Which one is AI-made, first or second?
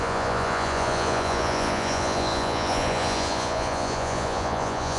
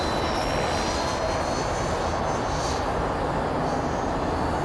first